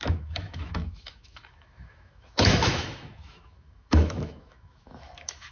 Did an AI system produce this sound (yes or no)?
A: yes